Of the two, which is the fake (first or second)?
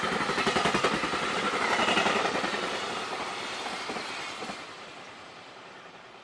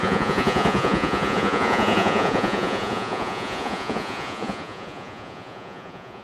second